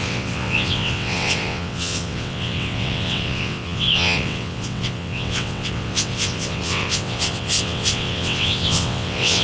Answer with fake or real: fake